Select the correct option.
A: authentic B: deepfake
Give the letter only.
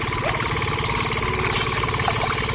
A